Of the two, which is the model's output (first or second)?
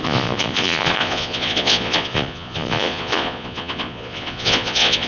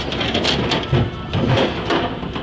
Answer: first